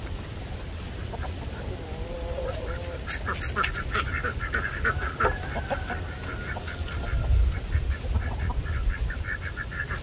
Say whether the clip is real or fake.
real